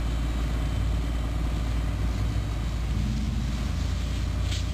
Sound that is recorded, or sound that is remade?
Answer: recorded